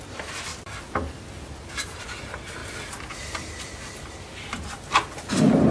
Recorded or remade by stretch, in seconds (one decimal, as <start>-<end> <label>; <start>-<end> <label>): 0.0-0.5 remade; 0.5-1.8 recorded; 1.8-2.6 remade; 2.6-3.8 recorded; 3.8-5.7 remade

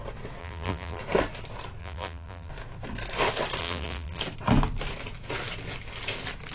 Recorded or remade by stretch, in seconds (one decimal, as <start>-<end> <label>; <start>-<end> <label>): 0.0-0.4 recorded; 0.4-1.0 remade; 1.0-1.8 recorded; 1.8-2.5 remade; 2.5-3.6 recorded; 3.6-4.2 remade; 4.2-6.5 recorded